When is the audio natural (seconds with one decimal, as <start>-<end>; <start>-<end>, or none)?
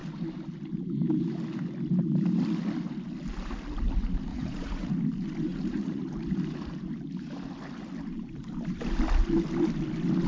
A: 0.0-4.3; 4.9-5.5; 6.0-10.3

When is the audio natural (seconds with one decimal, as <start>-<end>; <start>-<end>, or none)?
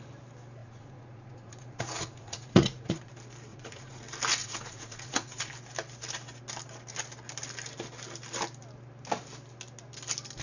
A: 0.0-0.6; 3.1-3.5; 4.0-4.4; 5.5-10.4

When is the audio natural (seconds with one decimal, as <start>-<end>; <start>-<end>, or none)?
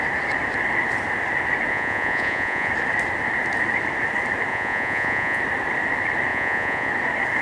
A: 0.0-1.7; 2.7-4.5; 5.4-6.3; 6.9-7.4